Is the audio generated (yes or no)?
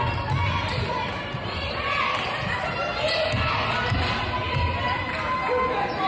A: no